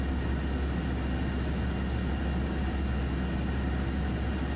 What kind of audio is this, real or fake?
real